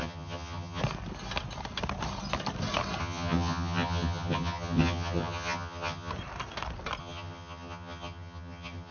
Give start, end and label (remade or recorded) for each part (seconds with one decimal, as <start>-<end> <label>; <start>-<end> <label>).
0.0-0.8 remade; 0.8-3.0 recorded; 3.0-6.1 remade; 6.1-7.0 recorded; 7.0-8.9 remade